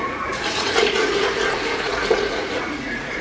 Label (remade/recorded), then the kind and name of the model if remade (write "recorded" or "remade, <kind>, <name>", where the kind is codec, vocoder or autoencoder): remade, vocoder, Vocos